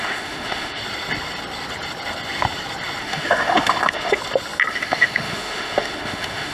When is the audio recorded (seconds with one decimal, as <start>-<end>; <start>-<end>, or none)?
0.8-3.0; 4.2-4.7